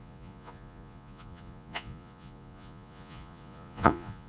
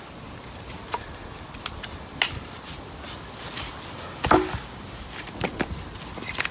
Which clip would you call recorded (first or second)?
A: second